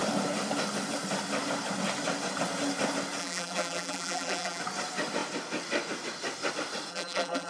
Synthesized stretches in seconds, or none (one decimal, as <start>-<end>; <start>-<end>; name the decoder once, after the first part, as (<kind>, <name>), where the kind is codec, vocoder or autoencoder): 3.2-4.6 (vocoder, BigVGAN v2); 6.9-7.5